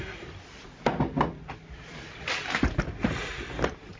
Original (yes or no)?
yes